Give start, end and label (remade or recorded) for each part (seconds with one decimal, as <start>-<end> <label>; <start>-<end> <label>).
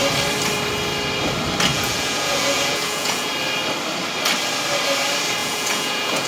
0.0-1.7 recorded; 1.7-3.3 remade; 3.3-5.4 recorded; 5.4-6.3 remade